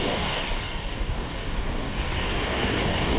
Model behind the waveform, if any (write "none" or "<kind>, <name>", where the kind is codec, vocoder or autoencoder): codec, DAC